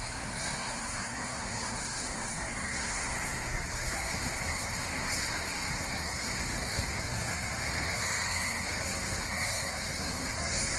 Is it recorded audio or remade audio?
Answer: remade